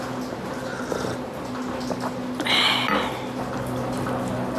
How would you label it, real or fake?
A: real